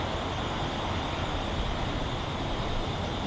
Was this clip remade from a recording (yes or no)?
no